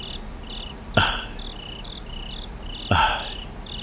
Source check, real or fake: real